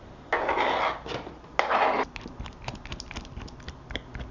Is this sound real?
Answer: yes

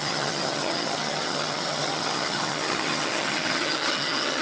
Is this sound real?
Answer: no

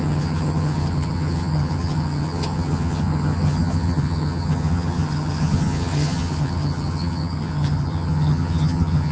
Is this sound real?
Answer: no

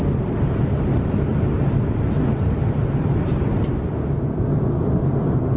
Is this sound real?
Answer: yes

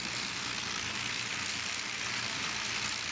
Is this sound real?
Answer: yes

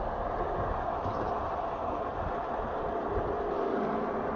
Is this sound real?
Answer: yes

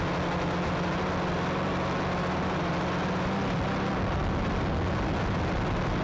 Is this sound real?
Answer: yes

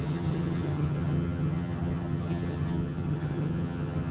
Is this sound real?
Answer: no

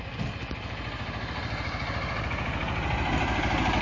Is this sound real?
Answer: yes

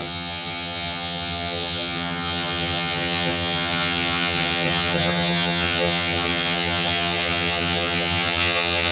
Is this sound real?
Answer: no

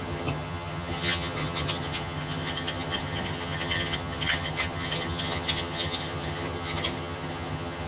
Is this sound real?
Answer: no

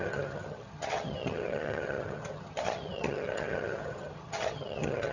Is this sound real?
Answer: no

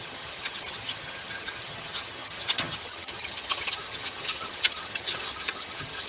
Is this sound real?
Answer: no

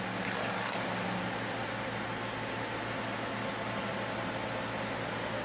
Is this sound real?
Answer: yes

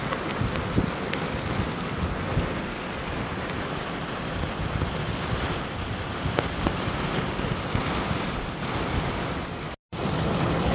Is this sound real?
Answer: yes